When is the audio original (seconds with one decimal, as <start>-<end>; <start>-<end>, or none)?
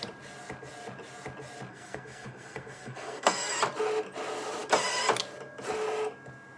0.0-1.7; 3.5-6.6